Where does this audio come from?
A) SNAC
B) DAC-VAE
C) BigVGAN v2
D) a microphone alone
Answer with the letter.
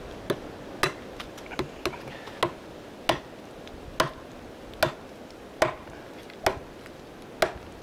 D